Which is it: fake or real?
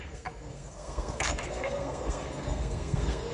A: fake